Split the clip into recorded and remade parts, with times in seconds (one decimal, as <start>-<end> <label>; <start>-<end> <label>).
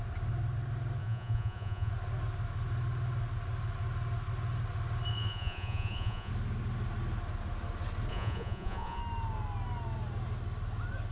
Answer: 0.0-1.0 recorded; 1.0-1.9 remade; 1.9-5.1 recorded; 5.1-6.3 remade; 6.3-8.1 recorded; 8.1-9.0 remade; 9.0-11.1 recorded